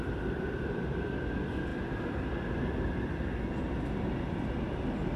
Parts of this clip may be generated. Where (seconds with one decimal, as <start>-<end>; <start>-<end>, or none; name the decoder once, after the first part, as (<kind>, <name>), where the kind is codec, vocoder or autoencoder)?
none